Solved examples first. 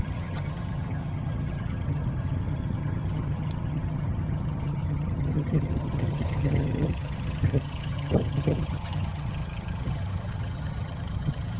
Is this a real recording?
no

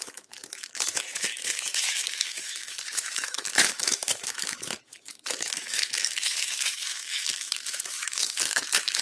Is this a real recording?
no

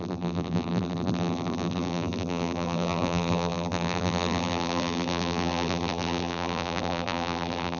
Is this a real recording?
no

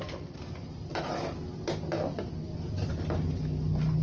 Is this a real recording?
yes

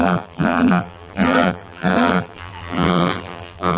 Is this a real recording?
no